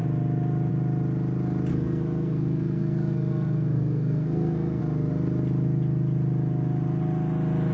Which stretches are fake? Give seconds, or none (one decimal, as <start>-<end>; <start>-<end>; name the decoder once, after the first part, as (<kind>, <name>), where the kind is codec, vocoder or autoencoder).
1.7-4.8 (codec, SNAC)